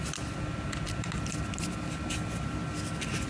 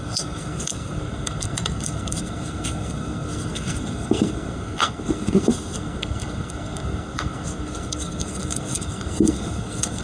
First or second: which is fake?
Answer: second